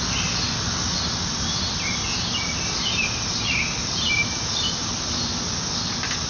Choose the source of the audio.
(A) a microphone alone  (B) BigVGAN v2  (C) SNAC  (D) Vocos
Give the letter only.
B